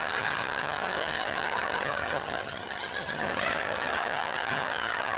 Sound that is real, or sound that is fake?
fake